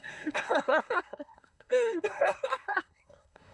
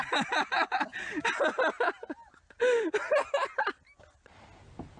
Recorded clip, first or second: second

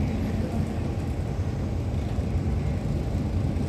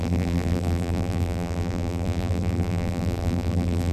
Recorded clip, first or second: first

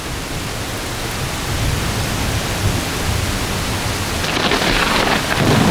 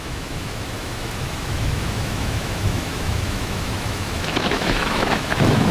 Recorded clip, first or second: first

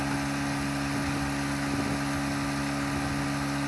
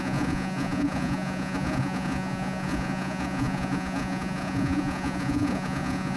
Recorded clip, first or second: first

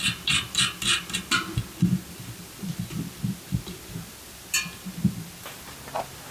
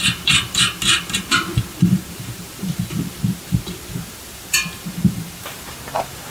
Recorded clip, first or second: first